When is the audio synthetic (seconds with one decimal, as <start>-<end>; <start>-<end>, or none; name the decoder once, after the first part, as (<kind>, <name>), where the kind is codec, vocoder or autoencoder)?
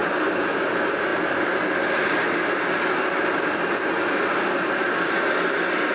none